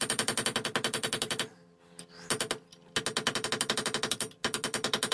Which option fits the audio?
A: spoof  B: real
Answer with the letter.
B